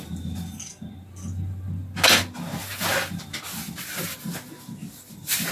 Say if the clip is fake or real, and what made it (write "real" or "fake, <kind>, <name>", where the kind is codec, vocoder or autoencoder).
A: real